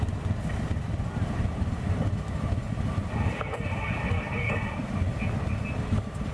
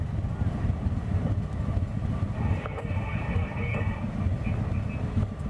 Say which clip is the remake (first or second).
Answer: first